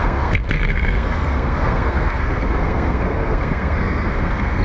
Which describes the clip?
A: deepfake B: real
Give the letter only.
A